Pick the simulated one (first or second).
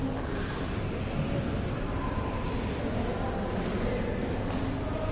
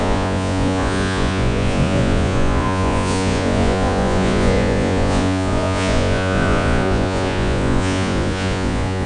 second